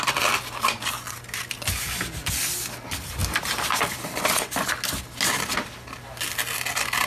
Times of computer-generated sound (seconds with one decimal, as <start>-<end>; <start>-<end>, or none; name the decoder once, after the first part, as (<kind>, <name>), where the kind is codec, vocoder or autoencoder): none